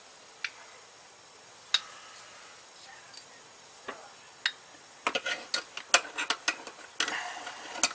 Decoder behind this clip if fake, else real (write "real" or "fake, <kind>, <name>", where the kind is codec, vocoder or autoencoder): real